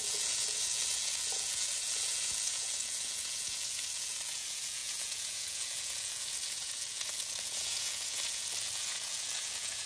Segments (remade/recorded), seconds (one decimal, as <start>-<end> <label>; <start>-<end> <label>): 0.0-9.9 remade